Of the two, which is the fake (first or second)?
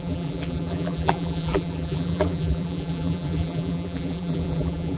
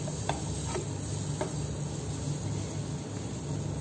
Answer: first